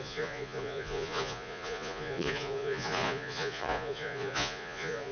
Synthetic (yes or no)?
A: yes